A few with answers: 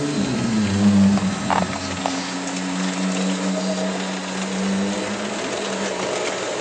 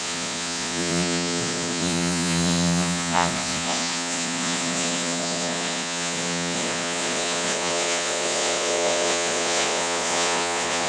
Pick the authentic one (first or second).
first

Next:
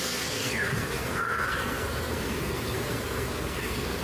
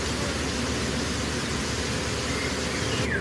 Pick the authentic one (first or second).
second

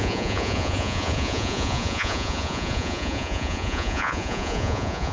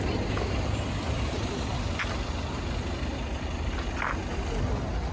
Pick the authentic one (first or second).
second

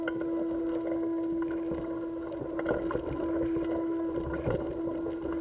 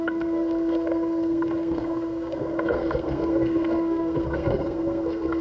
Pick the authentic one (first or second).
first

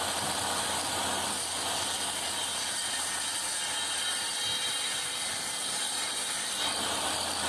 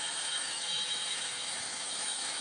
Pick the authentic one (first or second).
first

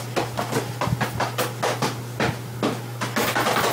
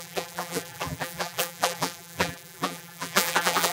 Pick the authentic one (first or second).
first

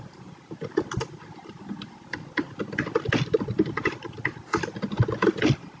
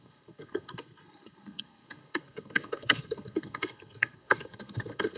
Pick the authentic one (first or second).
first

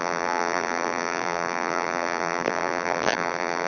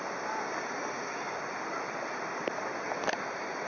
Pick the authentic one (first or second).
second